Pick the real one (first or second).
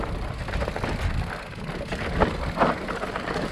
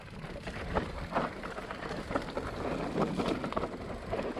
first